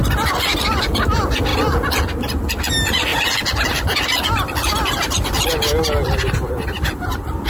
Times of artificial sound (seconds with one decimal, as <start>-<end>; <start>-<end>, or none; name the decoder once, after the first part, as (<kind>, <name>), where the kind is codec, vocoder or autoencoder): none